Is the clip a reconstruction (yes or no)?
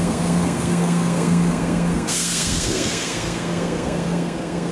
yes